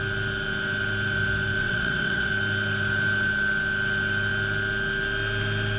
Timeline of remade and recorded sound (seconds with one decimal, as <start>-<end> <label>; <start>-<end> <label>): 0.0-1.6 recorded; 1.6-2.3 remade; 2.3-5.8 recorded